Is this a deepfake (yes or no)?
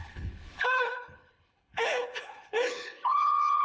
yes